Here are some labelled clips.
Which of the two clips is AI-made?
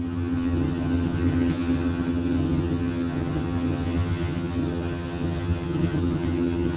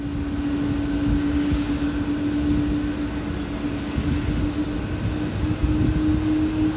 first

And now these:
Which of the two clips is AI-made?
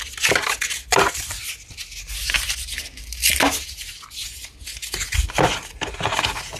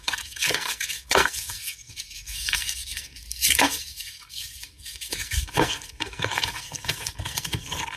second